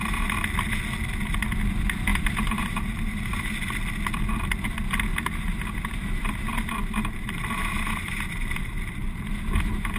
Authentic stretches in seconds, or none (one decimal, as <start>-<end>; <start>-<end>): 0.0-2.1; 3.4-5.1